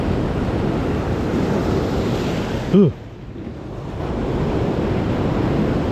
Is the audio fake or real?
real